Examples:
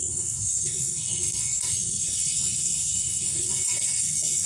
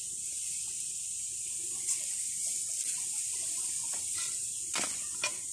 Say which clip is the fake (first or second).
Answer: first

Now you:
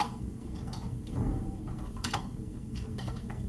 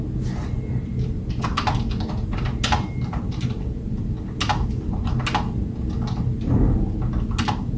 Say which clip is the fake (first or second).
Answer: first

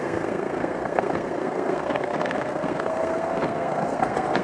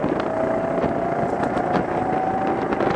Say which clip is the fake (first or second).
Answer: first